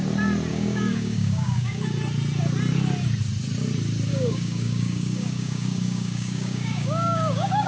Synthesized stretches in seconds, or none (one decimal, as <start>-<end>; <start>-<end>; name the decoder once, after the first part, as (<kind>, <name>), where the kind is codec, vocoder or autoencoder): 0.5-1.8 (codec, DAC); 4.1-7.7